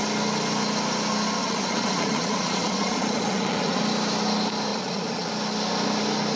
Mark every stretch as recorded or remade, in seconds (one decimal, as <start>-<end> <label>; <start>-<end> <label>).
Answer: 0.0-1.4 recorded; 1.4-3.8 remade; 3.8-4.7 recorded; 4.7-5.3 remade; 5.3-6.4 recorded